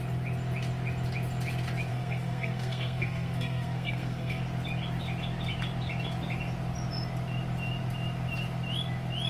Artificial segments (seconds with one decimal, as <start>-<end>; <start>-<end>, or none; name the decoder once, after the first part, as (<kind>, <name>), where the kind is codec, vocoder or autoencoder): 1.9-4.4 (codec, SNAC)